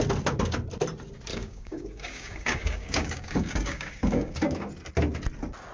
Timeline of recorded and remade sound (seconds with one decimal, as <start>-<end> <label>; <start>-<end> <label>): 0.0-1.3 recorded; 1.3-4.7 remade; 4.7-5.7 recorded